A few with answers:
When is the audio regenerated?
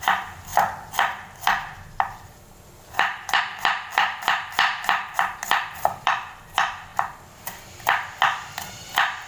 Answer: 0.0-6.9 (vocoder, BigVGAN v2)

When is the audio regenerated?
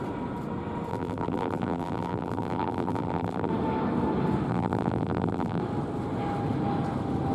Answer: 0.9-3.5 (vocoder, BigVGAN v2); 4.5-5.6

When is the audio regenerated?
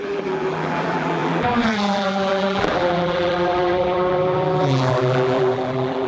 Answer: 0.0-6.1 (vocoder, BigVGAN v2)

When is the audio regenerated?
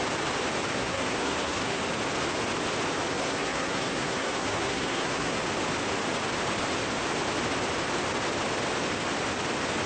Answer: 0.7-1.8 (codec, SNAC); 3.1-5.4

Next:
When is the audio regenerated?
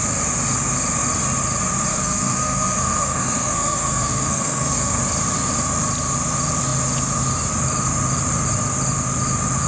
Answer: 1.9-5.0 (codec, SNAC)